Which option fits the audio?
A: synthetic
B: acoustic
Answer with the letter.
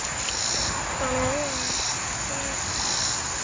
B